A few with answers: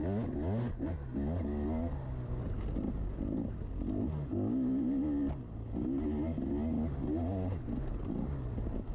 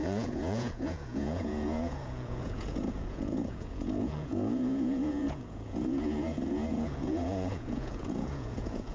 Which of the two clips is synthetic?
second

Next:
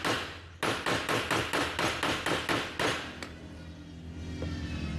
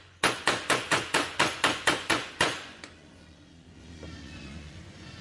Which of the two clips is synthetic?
second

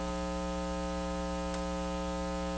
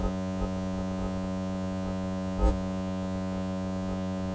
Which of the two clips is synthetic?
second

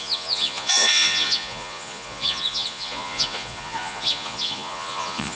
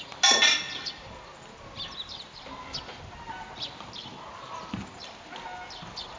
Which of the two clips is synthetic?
first